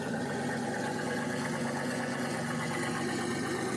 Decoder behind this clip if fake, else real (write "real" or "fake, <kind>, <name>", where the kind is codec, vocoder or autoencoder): fake, vocoder, Vocos